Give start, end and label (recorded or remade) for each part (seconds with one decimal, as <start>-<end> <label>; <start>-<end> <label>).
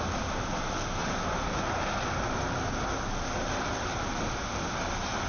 0.0-5.3 recorded